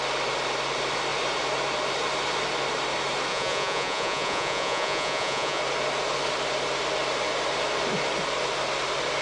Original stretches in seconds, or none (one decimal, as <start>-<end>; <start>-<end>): 0.0-3.3; 5.6-9.2